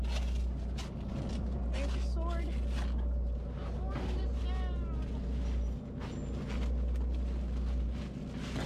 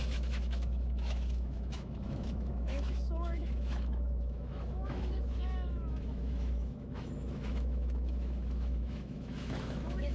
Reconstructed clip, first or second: second